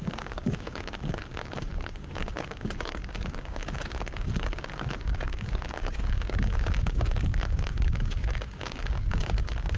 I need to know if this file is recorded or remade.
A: remade